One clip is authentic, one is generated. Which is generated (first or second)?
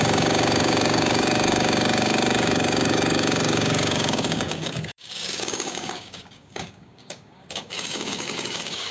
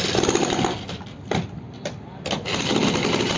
first